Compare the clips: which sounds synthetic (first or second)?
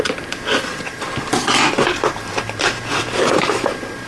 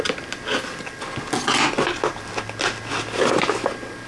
first